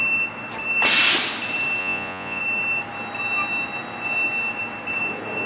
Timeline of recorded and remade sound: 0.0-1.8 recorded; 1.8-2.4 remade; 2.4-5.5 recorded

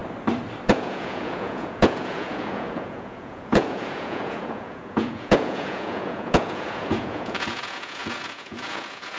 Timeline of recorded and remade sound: 0.0-0.7 recorded; 0.7-9.2 remade

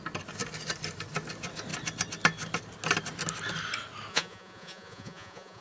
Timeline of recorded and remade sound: 0.0-4.1 recorded; 4.1-5.6 remade

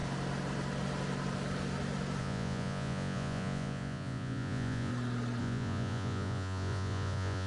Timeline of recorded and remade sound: 0.0-2.2 recorded; 2.2-4.9 remade; 4.9-5.4 recorded; 5.4-7.5 remade

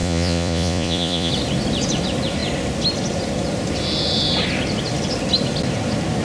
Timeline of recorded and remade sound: 0.0-1.3 remade; 1.3-6.2 recorded

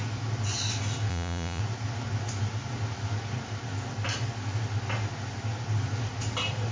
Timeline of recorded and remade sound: 0.0-1.1 recorded; 1.1-1.6 remade; 1.6-6.7 recorded

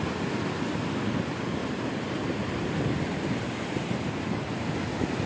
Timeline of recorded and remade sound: 0.0-5.3 recorded

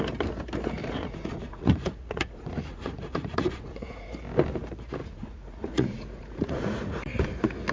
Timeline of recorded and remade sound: 0.0-0.8 recorded; 0.8-4.1 remade; 4.1-5.0 recorded; 5.0-7.0 remade; 7.0-7.7 recorded